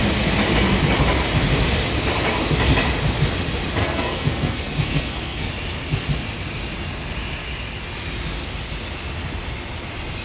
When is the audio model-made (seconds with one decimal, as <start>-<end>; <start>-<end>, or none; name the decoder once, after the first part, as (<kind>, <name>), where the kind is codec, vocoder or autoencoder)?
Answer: 3.8-5.5 (codec, SNAC)